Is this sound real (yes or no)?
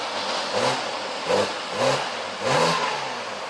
yes